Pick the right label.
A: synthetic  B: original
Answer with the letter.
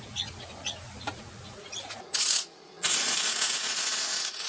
A